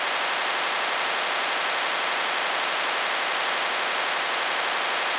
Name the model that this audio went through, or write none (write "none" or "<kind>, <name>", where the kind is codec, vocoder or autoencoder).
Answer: none